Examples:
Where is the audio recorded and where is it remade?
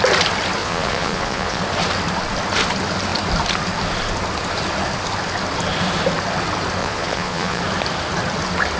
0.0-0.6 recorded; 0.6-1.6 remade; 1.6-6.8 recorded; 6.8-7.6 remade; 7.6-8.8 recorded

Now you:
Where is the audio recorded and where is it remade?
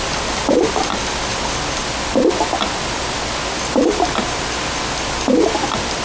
0.0-6.0 recorded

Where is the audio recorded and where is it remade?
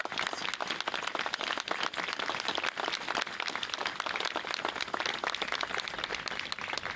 0.0-7.0 recorded